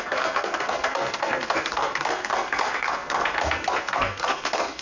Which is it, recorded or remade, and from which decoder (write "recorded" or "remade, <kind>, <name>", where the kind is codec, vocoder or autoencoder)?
remade, codec, SNAC